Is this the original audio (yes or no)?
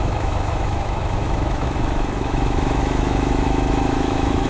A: no